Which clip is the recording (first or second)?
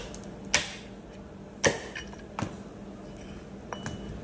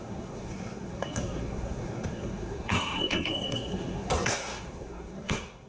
first